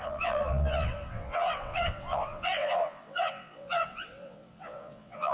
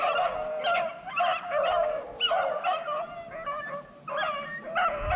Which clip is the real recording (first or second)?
second